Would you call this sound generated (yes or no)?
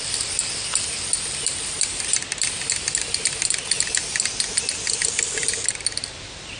no